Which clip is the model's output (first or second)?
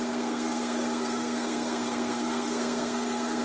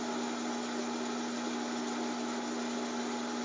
first